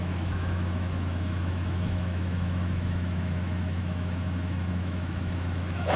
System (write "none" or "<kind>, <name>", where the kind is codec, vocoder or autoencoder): autoencoder, DAC-VAE